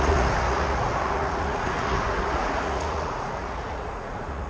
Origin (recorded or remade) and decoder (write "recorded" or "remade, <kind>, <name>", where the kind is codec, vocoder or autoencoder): remade, vocoder, Vocos